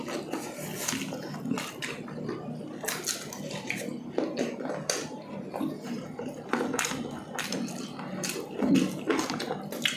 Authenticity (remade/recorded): recorded